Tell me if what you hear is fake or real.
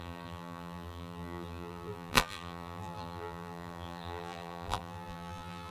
fake